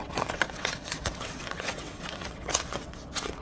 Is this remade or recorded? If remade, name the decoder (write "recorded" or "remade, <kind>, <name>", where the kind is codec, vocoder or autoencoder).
remade, vocoder, WaveNeXt